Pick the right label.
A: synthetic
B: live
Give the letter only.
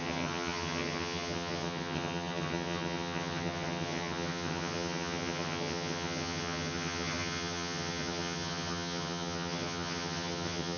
A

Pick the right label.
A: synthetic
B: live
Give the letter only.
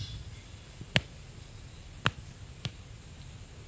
B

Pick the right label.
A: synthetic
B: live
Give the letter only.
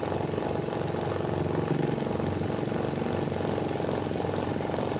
B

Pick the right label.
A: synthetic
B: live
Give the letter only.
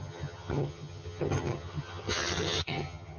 A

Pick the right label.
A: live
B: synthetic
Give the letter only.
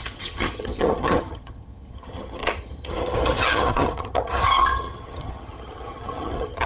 B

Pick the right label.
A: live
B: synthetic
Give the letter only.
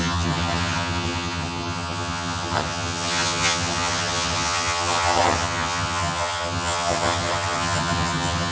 B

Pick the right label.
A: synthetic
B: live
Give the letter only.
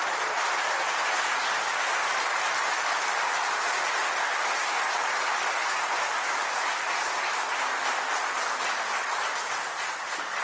B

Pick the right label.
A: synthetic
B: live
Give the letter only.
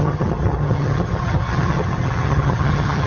A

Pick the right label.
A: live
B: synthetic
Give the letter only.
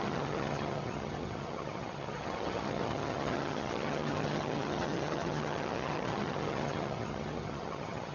B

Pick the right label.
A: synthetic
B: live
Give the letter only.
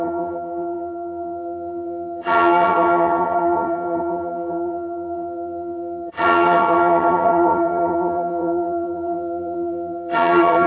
A